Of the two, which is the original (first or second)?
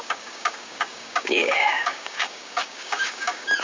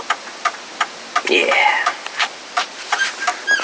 second